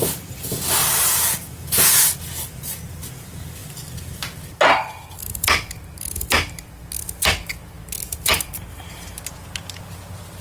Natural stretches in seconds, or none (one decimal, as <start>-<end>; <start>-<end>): 0.0-10.4